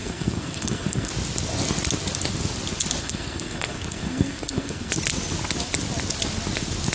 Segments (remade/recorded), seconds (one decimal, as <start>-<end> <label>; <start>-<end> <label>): 0.0-1.1 remade; 1.1-3.0 recorded; 3.0-4.9 remade; 4.9-6.9 recorded